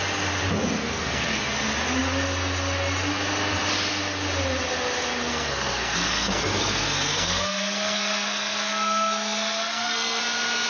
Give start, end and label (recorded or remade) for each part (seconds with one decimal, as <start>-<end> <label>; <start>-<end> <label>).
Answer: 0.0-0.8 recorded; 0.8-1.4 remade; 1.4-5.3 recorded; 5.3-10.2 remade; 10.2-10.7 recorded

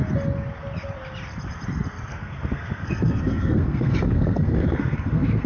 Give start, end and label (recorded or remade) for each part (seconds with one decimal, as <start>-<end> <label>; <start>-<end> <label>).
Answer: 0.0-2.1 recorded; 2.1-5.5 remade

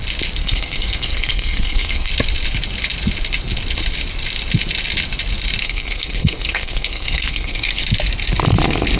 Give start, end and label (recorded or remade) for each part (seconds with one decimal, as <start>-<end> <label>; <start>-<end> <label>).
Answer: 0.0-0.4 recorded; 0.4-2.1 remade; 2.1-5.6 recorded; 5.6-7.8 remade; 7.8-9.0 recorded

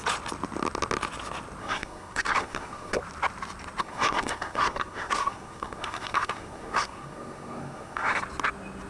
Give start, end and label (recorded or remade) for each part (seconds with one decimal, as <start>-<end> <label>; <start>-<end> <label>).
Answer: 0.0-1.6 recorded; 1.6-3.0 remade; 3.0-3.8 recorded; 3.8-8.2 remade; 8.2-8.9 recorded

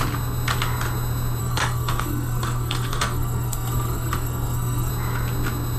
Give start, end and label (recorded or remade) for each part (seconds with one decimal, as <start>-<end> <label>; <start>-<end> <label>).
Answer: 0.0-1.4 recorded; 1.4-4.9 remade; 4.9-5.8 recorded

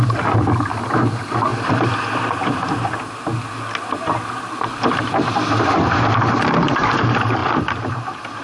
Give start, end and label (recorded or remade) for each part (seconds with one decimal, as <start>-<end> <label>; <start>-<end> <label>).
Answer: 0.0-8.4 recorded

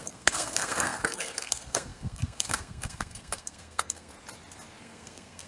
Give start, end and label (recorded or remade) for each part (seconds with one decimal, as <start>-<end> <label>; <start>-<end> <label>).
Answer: 0.0-4.1 remade; 4.1-4.8 recorded; 4.8-5.5 remade